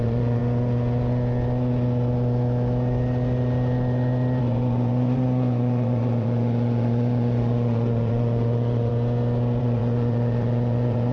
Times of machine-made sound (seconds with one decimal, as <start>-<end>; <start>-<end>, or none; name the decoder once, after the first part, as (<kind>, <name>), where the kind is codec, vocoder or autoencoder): 0.0-0.4 (vocoder, Vocos); 4.4-8.9; 9.6-11.1

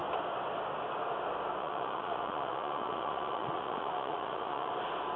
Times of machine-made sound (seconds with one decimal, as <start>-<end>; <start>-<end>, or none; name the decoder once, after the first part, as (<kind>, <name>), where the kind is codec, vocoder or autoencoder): 1.6-4.7 (vocoder, Vocos)

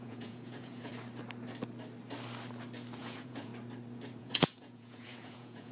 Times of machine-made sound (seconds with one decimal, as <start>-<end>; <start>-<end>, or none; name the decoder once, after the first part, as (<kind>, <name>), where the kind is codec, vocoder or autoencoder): 0.0-0.9 (vocoder, Vocos); 3.0-3.5; 4.2-5.7

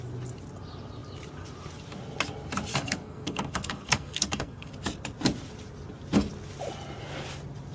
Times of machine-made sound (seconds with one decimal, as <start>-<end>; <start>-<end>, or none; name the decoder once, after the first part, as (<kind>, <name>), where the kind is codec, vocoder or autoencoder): 2.7-4.7 (codec, SNAC)